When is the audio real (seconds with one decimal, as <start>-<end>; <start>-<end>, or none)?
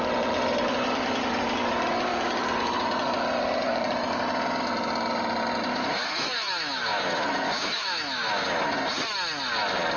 0.0-5.7; 8.6-10.0